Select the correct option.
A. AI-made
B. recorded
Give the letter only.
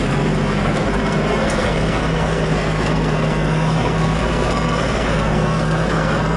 A